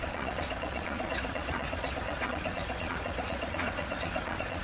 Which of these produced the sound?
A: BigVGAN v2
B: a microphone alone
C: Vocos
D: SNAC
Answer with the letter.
C